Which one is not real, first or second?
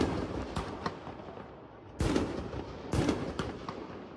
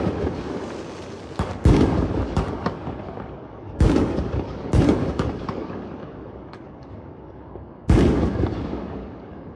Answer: second